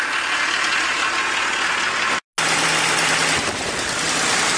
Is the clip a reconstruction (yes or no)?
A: no